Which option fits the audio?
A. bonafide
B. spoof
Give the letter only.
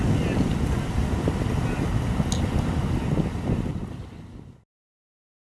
A